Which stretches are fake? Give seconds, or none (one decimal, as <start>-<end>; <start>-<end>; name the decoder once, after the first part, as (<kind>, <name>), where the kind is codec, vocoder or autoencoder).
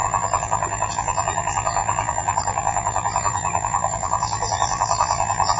0.0-5.6 (vocoder, BigVGAN v2)